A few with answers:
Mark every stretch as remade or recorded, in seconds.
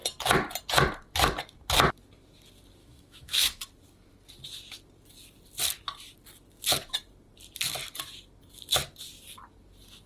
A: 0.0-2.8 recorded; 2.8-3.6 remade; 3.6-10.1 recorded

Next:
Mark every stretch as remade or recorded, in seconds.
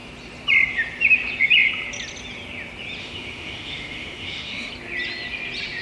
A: 0.0-3.0 recorded; 3.0-4.7 remade; 4.7-5.8 recorded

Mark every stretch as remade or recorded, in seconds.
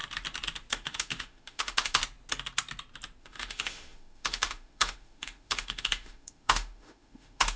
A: 0.0-0.7 recorded; 0.7-2.0 remade; 2.0-3.2 recorded; 3.2-7.6 remade